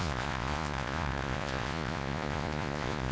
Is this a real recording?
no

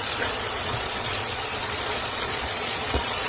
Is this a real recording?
no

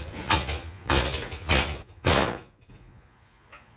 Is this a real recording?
no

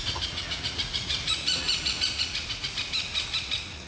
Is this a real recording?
no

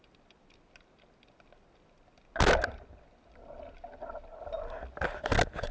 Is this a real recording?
yes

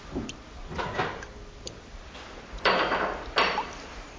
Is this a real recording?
yes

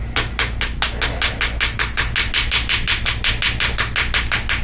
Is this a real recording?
yes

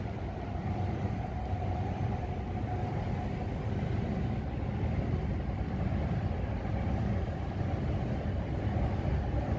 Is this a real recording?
yes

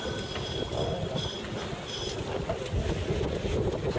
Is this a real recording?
yes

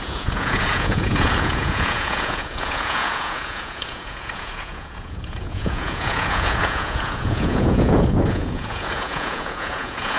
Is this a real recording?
no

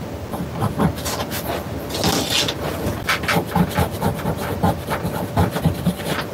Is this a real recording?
yes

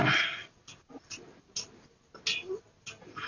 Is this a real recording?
yes